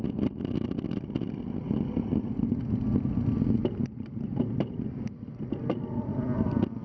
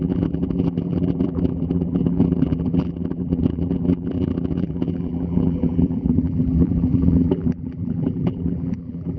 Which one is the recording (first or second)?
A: first